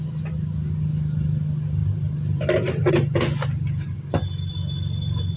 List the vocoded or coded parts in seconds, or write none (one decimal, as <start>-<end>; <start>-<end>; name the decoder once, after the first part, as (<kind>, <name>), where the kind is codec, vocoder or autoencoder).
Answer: 1.8-2.9 (vocoder, BigVGAN v2)